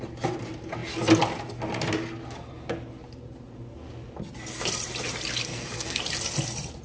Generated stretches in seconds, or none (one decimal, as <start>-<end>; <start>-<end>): 5.5-6.0